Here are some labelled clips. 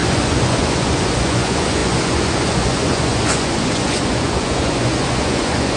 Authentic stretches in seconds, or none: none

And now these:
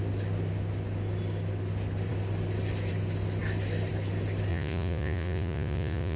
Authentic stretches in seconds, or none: 0.0-4.5

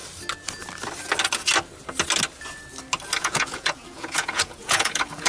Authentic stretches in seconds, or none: 0.0-3.2

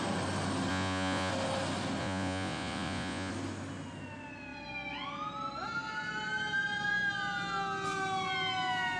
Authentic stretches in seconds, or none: 0.0-0.7; 1.3-2.0; 3.3-9.0

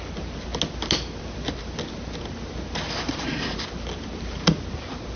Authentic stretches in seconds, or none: 0.0-5.2

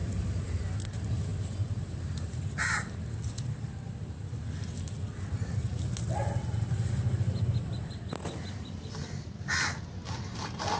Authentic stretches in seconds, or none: 0.0-10.8

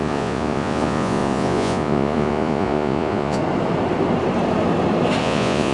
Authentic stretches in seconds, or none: 3.4-5.2